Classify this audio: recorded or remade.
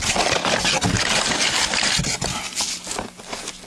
recorded